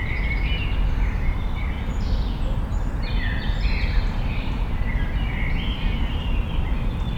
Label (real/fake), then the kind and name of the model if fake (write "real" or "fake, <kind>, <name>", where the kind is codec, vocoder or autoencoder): real